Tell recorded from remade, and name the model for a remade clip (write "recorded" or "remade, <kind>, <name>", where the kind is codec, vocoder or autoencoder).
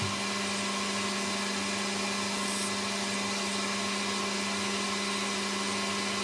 recorded